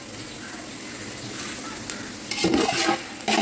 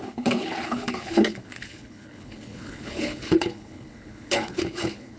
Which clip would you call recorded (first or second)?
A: first